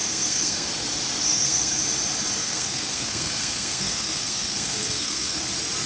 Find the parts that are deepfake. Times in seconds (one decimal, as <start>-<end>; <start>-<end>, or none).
0.0-0.7; 1.3-1.8; 2.4-5.5

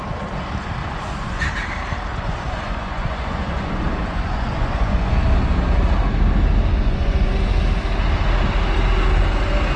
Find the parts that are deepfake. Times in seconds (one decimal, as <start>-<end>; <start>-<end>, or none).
0.8-1.4; 2.1-5.1; 6.7-7.3